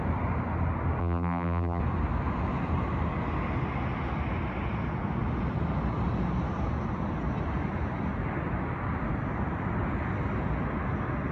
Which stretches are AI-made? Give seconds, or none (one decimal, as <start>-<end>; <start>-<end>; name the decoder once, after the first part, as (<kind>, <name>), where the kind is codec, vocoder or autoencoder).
1.0-1.8 (vocoder, BigVGAN v2)